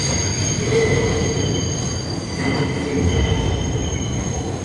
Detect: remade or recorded recorded